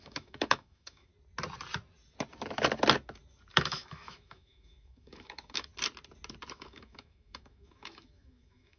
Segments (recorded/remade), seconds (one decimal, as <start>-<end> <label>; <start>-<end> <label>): 0.0-1.1 remade; 1.1-3.5 recorded; 3.5-5.7 remade; 5.7-6.5 recorded; 6.5-8.8 remade